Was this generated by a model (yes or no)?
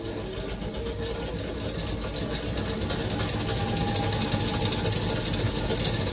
no